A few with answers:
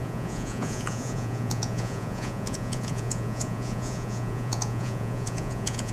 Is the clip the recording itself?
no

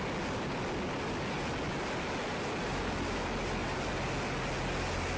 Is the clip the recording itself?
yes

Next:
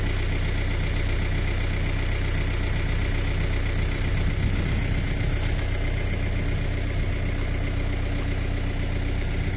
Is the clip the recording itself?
yes